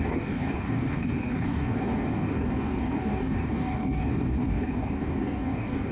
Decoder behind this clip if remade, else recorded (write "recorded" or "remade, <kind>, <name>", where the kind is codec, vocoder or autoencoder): remade, codec, DAC